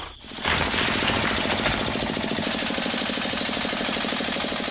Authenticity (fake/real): real